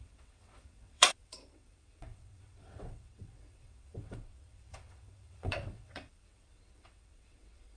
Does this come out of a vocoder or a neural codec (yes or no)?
yes